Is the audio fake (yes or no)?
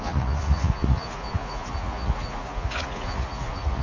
yes